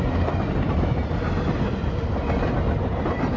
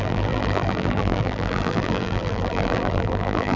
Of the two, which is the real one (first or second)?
first